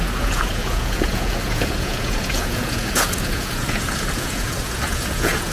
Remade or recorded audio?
remade